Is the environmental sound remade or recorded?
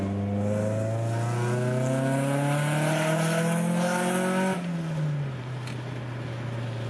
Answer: recorded